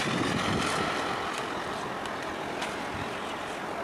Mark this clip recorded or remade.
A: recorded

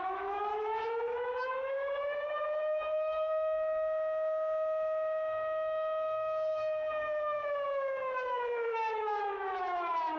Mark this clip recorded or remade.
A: remade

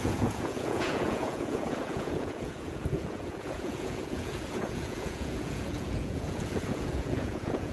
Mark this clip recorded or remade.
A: remade